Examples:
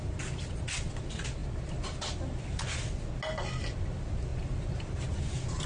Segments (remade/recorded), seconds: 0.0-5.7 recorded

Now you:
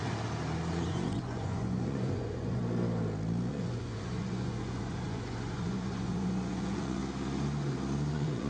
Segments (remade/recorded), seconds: 0.0-0.7 recorded; 0.7-2.6 remade; 2.6-3.5 recorded; 3.5-7.0 remade; 7.0-8.1 recorded; 8.1-8.5 remade

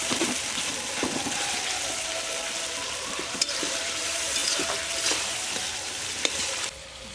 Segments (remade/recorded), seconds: 0.0-4.4 remade; 4.4-4.9 recorded; 4.9-7.1 remade